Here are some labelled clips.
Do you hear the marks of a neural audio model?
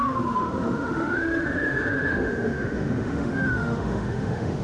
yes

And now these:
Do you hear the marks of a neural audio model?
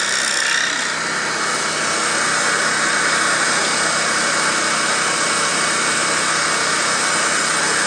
no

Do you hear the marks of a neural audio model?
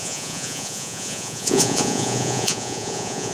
yes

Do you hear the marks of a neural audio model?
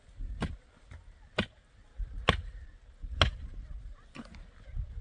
no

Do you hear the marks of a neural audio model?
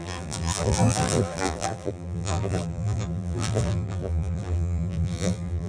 yes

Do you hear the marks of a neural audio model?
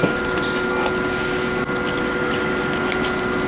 no